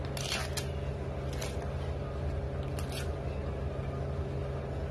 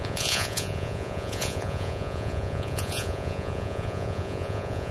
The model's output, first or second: second